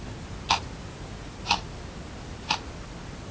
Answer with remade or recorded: recorded